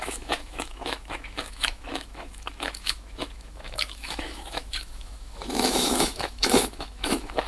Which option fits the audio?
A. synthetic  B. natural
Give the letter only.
A